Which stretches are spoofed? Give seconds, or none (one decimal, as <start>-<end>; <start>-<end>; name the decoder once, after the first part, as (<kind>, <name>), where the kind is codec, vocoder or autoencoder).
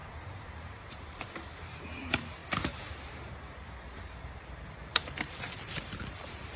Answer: 0.0-6.6 (vocoder, BigVGAN v2)